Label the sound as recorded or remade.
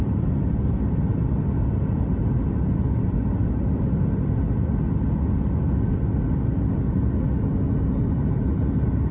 recorded